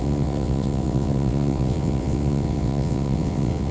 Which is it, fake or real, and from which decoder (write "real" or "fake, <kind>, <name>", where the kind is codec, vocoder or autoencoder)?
fake, vocoder, WaveNeXt